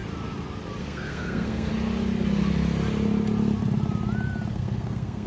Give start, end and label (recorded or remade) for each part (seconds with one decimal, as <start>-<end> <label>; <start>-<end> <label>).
0.0-0.8 recorded; 0.8-1.7 remade; 1.7-4.5 recorded; 4.5-5.3 remade